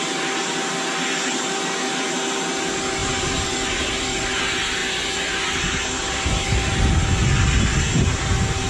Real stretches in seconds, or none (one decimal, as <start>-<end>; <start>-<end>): 0.0-4.8; 6.8-8.7